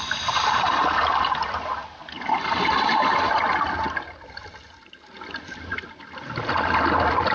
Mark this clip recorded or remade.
recorded